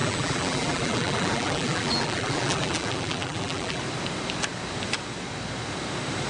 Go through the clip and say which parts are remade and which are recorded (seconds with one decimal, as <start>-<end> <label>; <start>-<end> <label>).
0.0-3.8 remade; 3.8-6.3 recorded